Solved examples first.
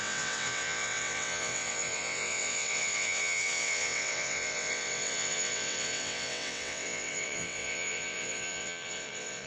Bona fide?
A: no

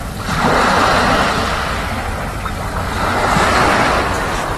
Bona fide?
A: yes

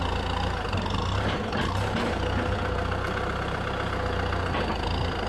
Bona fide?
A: yes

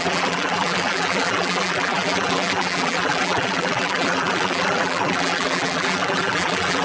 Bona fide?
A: no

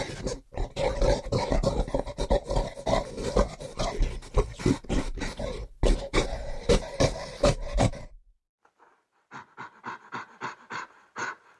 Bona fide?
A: yes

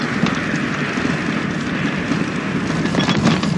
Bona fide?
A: yes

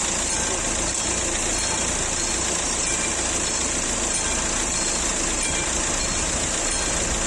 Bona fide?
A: yes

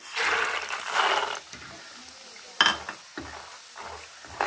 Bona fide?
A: yes